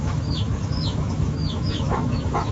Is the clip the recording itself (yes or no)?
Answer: no